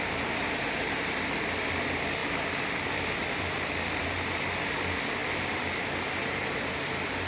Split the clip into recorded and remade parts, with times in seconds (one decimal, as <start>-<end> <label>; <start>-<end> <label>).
0.0-2.2 remade; 2.2-2.9 recorded; 2.9-5.2 remade; 5.2-6.6 recorded; 6.6-7.3 remade